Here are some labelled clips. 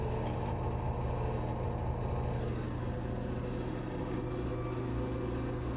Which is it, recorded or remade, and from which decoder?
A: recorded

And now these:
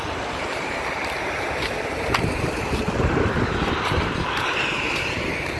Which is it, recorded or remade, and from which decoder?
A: remade, vocoder, BigVGAN v2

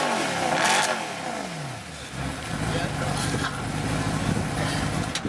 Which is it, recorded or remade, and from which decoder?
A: recorded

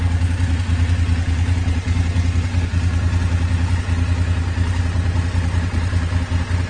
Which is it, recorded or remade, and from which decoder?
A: recorded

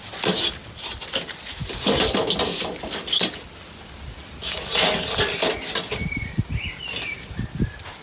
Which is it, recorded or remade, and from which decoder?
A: recorded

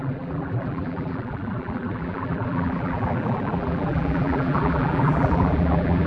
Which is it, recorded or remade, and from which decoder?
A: remade, vocoder, BigVGAN v2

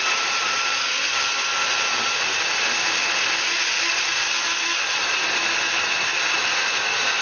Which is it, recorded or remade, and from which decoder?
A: recorded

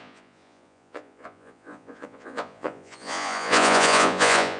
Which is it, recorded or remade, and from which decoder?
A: remade, vocoder, Vocos